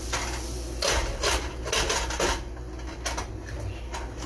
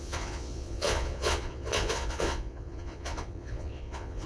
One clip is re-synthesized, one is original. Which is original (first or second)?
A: first